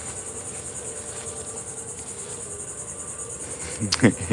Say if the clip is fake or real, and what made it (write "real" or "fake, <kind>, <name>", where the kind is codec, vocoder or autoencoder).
real